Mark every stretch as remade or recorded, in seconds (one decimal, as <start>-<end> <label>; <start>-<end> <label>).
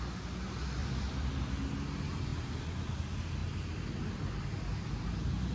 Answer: 0.0-0.8 recorded; 0.8-1.3 remade; 1.3-3.4 recorded; 3.4-4.6 remade; 4.6-5.5 recorded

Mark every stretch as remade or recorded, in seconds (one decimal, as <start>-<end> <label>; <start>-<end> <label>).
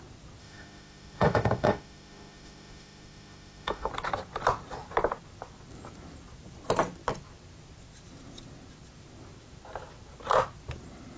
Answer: 0.0-0.4 recorded; 0.4-3.9 remade; 3.9-11.2 recorded